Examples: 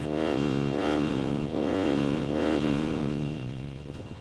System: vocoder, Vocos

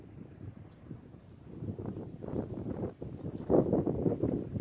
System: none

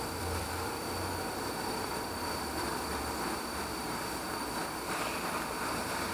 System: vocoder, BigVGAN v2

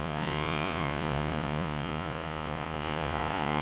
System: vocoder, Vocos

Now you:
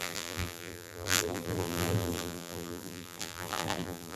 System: vocoder, BigVGAN v2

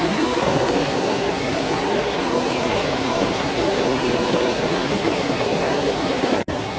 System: codec, SNAC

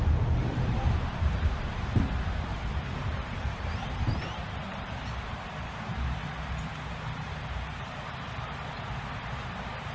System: vocoder, BigVGAN v2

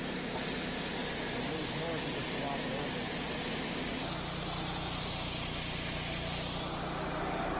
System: none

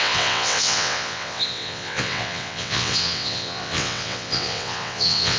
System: vocoder, WaveNeXt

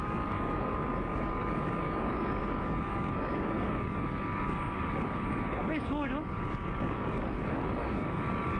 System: codec, DAC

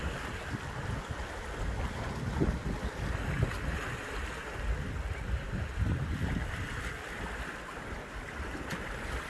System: none